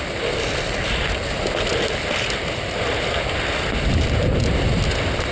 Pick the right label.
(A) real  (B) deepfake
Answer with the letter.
A